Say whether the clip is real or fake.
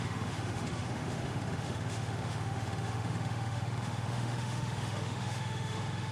fake